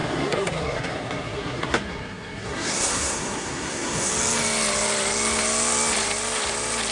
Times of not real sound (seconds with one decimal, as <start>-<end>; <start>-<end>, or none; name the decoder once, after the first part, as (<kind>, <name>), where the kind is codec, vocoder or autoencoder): 0.0-4.1 (codec, SNAC)